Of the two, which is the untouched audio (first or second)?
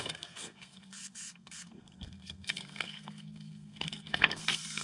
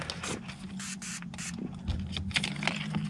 second